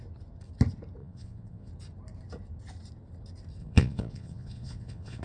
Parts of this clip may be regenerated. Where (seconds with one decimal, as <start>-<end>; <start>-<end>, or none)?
1.0-1.7; 3.6-5.2